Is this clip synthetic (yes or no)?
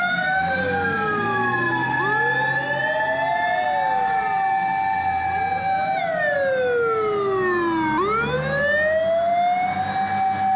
no